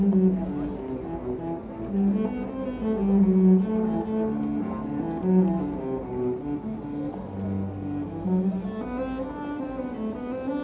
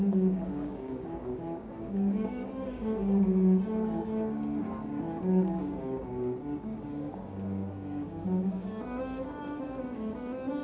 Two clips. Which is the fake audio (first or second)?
second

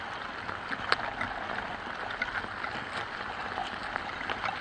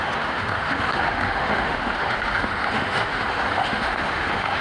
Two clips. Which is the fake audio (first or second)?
second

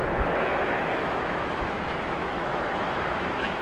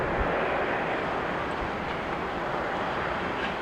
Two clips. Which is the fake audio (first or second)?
first